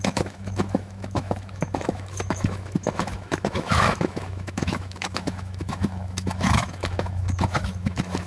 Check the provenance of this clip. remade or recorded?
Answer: remade